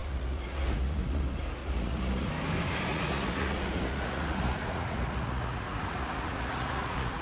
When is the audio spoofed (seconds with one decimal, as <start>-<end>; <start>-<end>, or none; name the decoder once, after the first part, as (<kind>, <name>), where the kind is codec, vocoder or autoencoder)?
0.0-1.2 (vocoder, Vocos); 1.6-2.3; 2.9-7.2